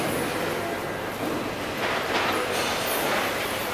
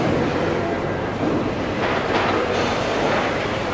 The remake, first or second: second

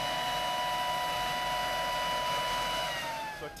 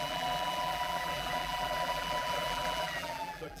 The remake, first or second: second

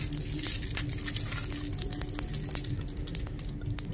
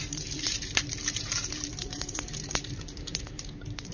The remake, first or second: second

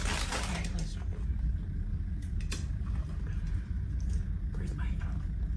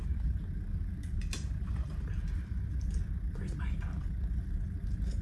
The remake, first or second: second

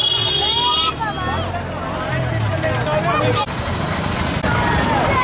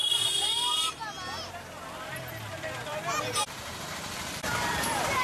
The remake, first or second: second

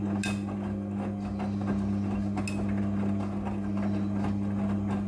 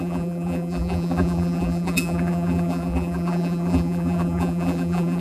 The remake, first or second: second